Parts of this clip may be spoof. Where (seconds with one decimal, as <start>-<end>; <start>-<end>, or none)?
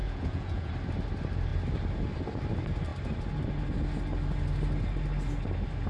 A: 0.0-0.7